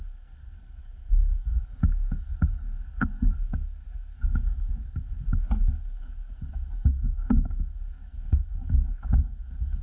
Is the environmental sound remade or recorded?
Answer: remade